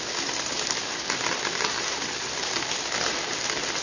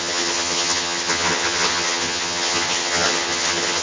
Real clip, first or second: first